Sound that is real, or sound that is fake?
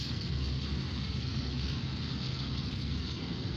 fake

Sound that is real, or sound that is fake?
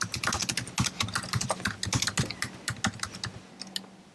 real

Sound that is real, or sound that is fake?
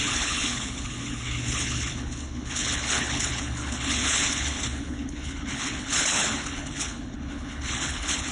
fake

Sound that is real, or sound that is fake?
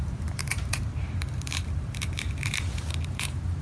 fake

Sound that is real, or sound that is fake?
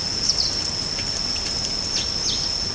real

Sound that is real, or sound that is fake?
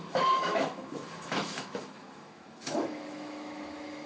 fake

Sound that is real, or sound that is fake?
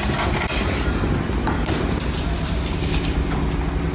real